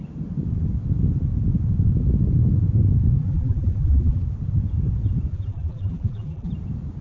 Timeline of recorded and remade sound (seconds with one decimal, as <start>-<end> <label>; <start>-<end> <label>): 0.0-3.2 recorded; 3.2-4.2 remade; 4.2-5.3 recorded; 5.3-6.5 remade; 6.5-7.0 recorded